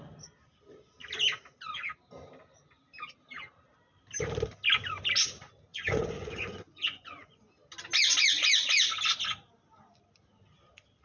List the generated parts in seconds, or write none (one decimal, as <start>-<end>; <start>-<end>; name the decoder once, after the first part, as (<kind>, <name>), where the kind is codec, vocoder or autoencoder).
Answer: 5.7-7.4 (vocoder, Vocos)